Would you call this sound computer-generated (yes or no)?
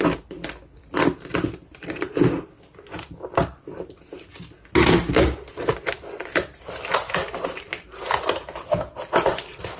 no